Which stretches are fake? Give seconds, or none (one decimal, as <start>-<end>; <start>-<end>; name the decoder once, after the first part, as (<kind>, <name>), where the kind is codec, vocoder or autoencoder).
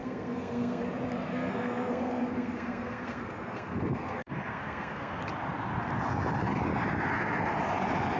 0.0-0.8 (codec, SNAC); 1.3-5.2